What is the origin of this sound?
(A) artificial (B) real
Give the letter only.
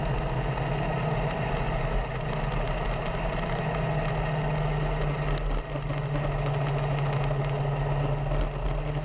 B